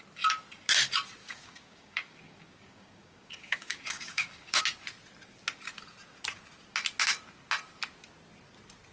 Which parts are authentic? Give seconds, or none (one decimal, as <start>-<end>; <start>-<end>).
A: 0.0-1.2; 4.6-8.9